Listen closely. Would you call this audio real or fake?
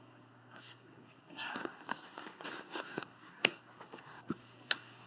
fake